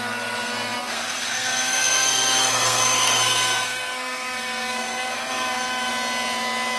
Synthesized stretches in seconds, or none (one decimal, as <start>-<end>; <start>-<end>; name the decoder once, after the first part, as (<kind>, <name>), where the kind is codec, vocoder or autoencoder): 0.0-5.9 (codec, SNAC)